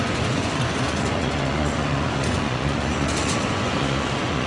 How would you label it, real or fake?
fake